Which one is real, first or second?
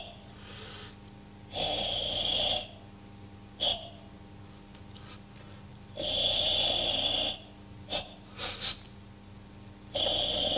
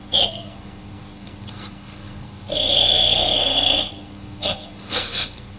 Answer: first